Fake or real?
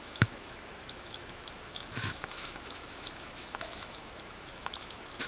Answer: fake